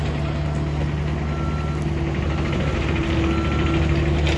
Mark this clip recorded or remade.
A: recorded